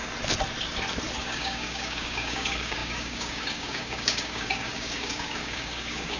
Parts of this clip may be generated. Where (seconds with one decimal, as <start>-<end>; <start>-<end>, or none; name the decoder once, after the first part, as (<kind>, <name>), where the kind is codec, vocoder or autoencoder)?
1.2-6.2 (codec, DAC)